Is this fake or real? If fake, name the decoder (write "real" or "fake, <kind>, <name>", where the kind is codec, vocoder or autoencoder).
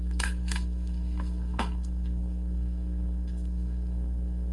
fake, codec, SNAC